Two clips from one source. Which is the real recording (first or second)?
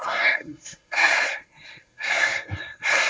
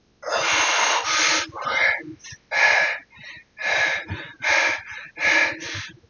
second